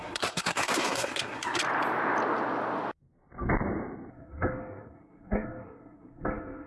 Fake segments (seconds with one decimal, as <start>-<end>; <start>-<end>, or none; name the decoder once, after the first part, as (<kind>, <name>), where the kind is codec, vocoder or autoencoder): 0.0-1.6 (codec, SNAC); 4.1-6.7